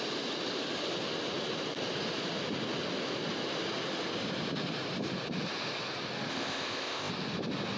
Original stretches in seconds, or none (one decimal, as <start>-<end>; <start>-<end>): 0.0-6.3; 7.1-7.8